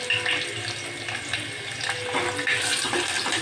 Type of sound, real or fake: real